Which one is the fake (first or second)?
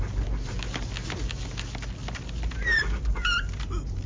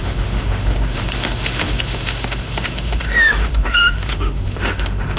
second